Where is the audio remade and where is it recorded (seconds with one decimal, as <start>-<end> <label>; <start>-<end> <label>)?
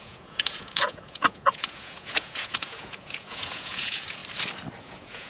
0.0-4.2 remade; 4.2-4.8 recorded; 4.8-5.3 remade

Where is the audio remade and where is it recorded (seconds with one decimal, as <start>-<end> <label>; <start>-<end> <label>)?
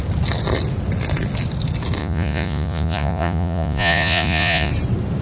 0.0-2.0 recorded; 2.0-4.7 remade; 4.7-5.2 recorded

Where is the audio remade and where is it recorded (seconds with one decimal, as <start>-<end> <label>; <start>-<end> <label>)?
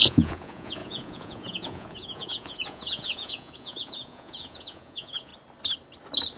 0.0-5.3 remade; 5.3-6.4 recorded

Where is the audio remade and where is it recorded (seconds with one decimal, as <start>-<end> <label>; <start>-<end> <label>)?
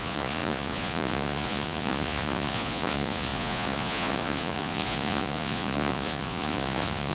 0.0-7.1 remade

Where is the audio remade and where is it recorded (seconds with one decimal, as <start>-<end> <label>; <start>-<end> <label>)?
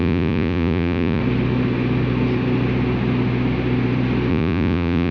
0.0-1.2 remade; 1.2-4.3 recorded; 4.3-5.1 remade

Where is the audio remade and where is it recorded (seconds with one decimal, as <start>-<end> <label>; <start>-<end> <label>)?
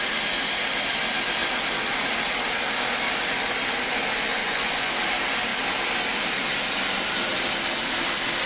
0.0-4.4 recorded; 4.4-4.9 remade; 4.9-8.5 recorded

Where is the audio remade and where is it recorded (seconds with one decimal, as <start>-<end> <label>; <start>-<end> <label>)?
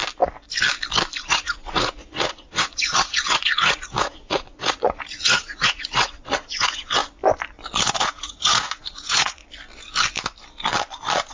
0.0-1.2 recorded; 1.2-7.0 remade; 7.0-7.8 recorded; 7.8-9.4 remade; 9.4-11.3 recorded